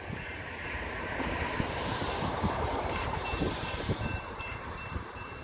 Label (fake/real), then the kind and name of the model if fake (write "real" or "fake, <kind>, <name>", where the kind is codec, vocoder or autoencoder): fake, vocoder, BigVGAN v2